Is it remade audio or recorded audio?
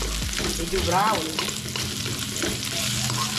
recorded